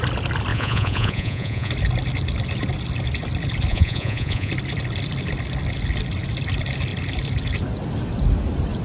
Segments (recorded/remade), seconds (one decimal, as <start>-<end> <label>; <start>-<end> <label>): 0.0-0.5 recorded; 0.5-1.7 remade; 1.7-3.7 recorded; 3.7-4.5 remade; 4.5-8.8 recorded